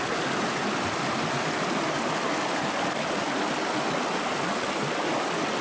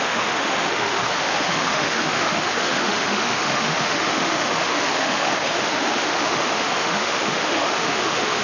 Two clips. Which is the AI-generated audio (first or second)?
second